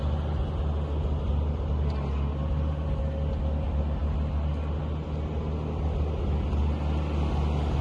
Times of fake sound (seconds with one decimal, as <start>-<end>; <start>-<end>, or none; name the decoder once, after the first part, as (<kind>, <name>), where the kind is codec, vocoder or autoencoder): none